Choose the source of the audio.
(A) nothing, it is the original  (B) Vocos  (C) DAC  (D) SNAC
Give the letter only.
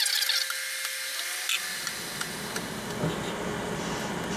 A